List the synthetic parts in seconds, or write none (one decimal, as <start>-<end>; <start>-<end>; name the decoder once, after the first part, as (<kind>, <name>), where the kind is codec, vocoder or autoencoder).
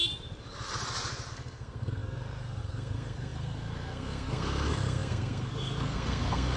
1.3-6.6 (codec, SNAC)